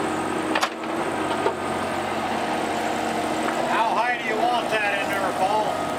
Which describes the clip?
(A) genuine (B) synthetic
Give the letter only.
A